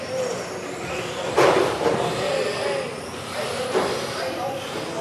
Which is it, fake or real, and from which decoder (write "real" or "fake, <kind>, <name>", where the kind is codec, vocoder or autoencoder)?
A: real